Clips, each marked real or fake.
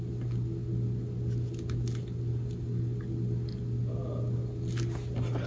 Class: real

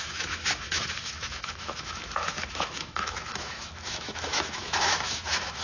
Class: fake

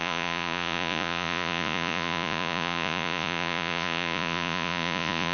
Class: fake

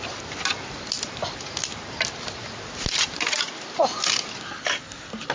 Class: real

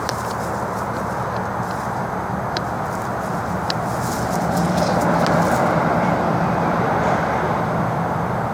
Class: real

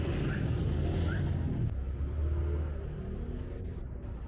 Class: real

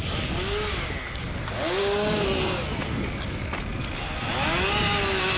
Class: real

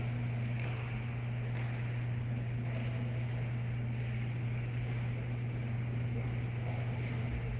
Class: real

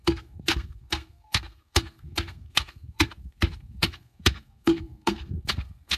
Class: fake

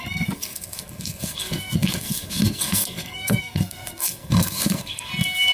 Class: fake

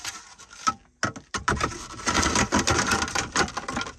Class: real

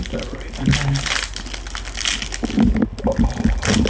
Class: real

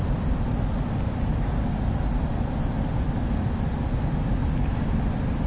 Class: real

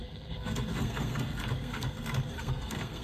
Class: fake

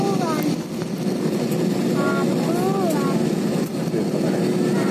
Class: real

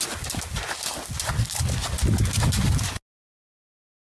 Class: real